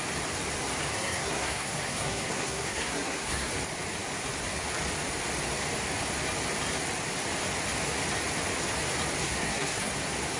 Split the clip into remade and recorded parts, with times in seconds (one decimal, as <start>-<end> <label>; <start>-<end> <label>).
0.0-0.9 recorded; 0.9-3.5 remade; 3.5-9.2 recorded; 9.2-9.9 remade; 9.9-10.4 recorded